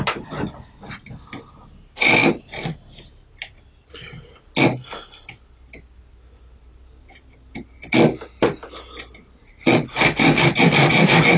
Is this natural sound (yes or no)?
yes